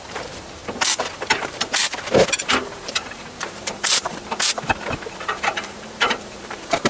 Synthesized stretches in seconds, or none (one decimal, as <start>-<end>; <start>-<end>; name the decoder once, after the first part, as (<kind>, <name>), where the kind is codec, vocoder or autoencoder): 0.0-0.6 (vocoder, BigVGAN v2); 1.2-1.8; 2.3-4.1; 5.5-6.9